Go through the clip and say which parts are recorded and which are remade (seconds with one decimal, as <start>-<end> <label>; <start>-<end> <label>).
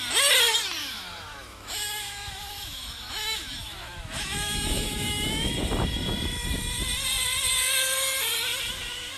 0.0-0.8 recorded; 0.8-5.5 remade; 5.5-9.2 recorded